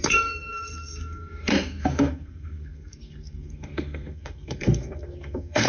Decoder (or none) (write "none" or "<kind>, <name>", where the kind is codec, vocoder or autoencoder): codec, SNAC